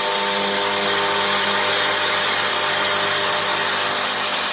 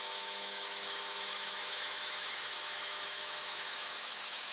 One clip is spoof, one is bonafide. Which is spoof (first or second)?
second